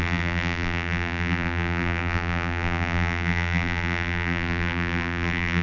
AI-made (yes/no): yes